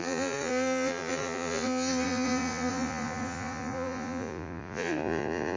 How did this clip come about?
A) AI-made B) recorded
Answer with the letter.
A